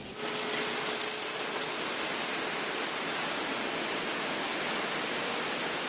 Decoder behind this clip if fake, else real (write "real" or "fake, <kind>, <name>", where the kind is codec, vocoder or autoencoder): real